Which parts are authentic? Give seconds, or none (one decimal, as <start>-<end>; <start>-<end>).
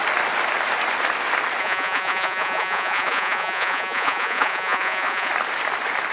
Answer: 0.0-1.6; 5.3-6.1